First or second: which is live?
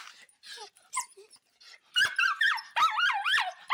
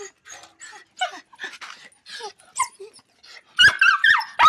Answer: second